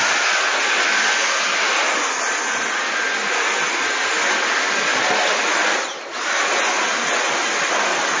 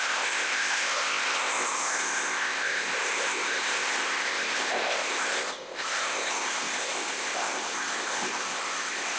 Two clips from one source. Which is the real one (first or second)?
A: first